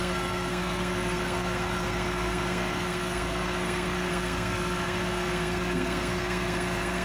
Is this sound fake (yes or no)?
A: yes